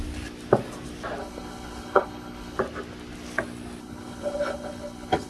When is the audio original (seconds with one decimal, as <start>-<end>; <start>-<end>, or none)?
0.0-1.2; 2.6-3.8